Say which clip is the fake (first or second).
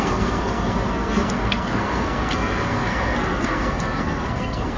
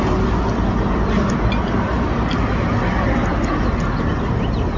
first